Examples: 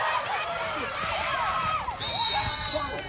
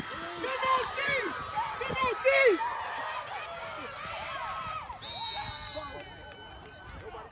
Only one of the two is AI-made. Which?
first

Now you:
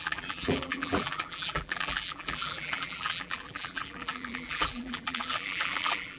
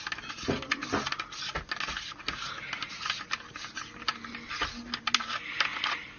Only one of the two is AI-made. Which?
first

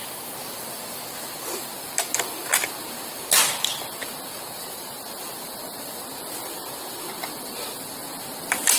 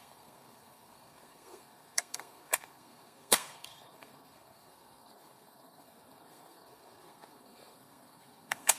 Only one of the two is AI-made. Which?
second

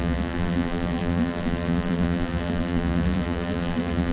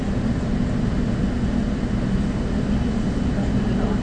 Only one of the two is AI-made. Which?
first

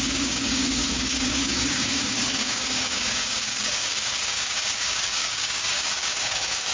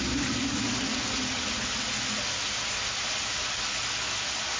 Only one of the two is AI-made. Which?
first